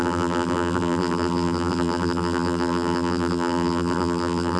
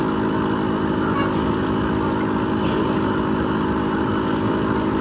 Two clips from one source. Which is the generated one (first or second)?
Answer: first